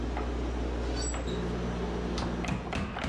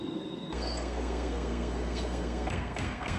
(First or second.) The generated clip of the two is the second